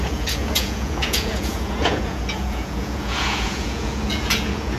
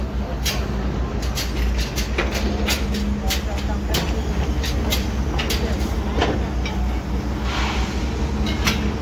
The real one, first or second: second